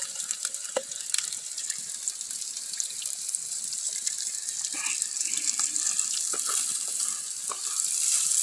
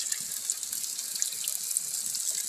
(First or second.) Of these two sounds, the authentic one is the second